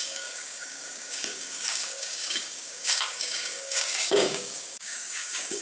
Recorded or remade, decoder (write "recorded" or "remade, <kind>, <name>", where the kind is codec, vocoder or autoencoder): remade, codec, DAC